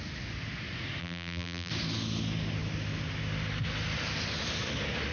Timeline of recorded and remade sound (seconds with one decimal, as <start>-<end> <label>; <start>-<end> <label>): 0.0-1.0 recorded; 1.0-1.7 remade; 1.7-5.1 recorded

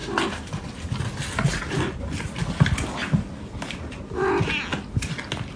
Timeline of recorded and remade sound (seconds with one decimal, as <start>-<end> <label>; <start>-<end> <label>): 0.0-5.6 recorded

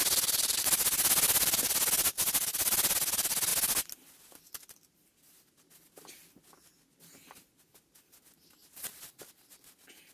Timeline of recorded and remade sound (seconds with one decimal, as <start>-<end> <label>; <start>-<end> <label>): 0.0-8.6 recorded; 8.6-9.2 remade; 9.2-10.1 recorded

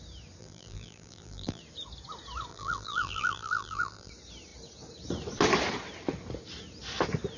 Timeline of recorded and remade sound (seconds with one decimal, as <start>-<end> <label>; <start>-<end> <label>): 0.0-0.4 recorded; 0.4-1.6 remade; 1.6-2.5 recorded; 2.5-4.1 remade; 4.1-7.4 recorded

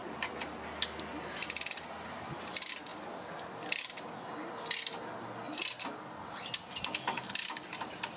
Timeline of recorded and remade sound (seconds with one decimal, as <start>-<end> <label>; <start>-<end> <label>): 0.0-8.2 recorded

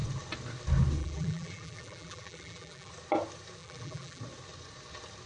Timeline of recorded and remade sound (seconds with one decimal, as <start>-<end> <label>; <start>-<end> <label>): 0.0-1.0 recorded; 1.0-2.9 remade; 2.9-3.6 recorded; 3.6-4.2 remade; 4.2-5.3 recorded

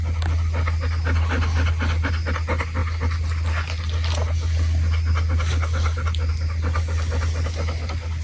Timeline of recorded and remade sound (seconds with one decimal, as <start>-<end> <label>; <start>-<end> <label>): 0.0-8.2 recorded

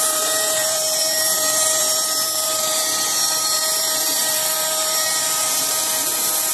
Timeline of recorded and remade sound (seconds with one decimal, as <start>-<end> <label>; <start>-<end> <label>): 0.0-6.5 remade